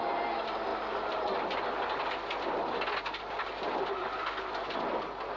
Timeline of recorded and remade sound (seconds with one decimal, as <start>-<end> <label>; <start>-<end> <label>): 0.0-5.4 recorded